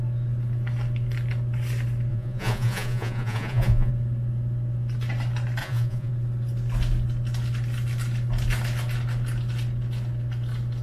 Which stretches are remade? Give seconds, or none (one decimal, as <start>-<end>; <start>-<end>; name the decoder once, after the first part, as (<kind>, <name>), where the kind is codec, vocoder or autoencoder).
2.1-3.9 (vocoder, Vocos); 5.6-6.1